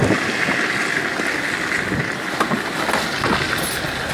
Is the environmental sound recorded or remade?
recorded